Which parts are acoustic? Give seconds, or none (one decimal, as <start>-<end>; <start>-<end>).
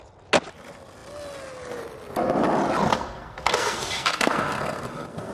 0.0-2.9